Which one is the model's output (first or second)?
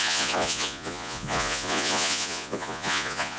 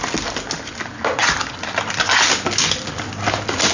first